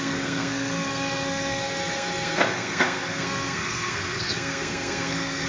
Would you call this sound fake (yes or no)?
yes